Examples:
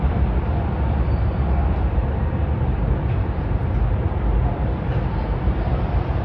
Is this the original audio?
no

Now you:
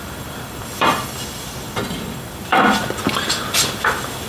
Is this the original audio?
no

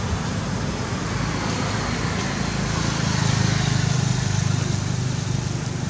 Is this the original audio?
yes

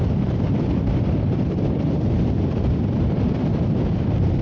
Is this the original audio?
no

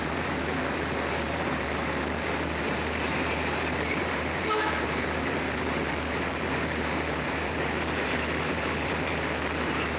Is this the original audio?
no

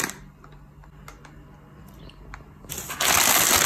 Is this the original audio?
yes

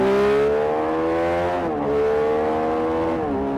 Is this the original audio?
yes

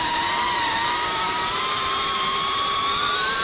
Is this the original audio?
no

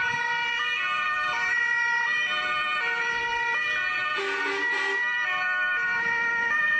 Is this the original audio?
yes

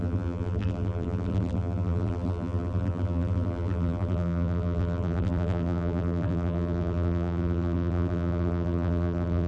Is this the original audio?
no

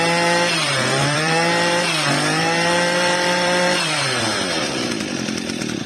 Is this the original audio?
no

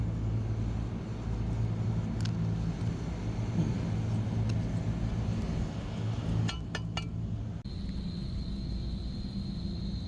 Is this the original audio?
yes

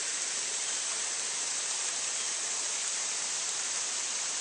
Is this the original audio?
no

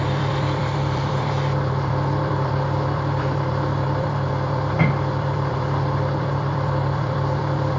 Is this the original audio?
no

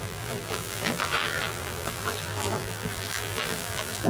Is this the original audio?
no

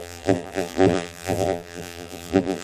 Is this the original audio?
no